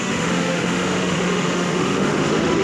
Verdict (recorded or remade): remade